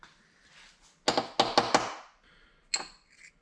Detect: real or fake real